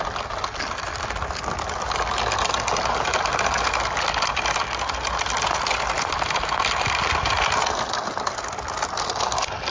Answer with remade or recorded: recorded